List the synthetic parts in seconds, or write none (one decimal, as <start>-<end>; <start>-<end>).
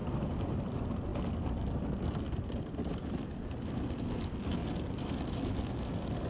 0.0-0.6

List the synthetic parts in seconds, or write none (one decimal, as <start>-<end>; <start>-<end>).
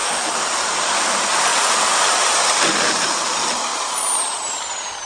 1.0-5.1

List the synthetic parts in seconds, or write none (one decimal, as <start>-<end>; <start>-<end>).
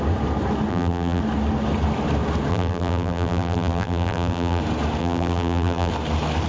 0.7-1.2; 2.5-4.6; 5.0-5.9